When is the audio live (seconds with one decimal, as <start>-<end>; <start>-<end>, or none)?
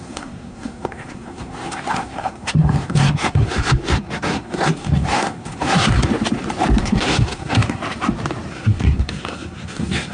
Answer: 6.1-6.8; 7.8-8.5